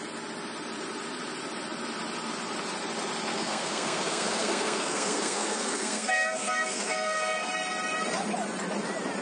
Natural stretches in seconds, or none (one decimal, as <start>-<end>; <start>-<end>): 0.0-3.3; 7.5-9.2

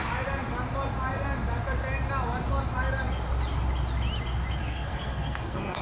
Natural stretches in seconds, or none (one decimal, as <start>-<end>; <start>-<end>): 0.0-4.6

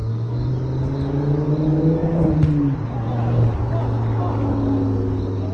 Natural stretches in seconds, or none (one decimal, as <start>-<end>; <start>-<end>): 0.5-5.5

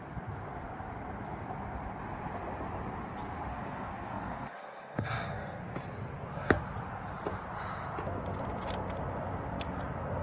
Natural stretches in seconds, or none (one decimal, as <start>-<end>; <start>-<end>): 0.0-3.5; 5.6-10.2